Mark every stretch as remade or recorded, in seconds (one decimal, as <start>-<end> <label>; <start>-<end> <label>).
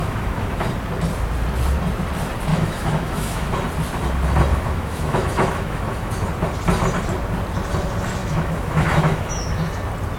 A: 0.0-0.7 remade; 0.7-2.5 recorded; 2.5-3.5 remade; 3.5-4.5 recorded; 4.5-6.3 remade; 6.3-8.2 recorded; 8.2-9.6 remade; 9.6-10.2 recorded